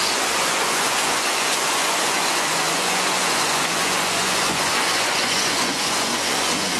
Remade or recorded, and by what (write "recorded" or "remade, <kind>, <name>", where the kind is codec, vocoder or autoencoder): remade, vocoder, Vocos